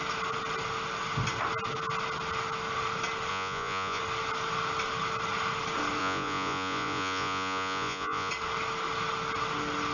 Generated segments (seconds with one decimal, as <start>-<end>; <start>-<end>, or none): 3.3-4.0; 6.0-8.3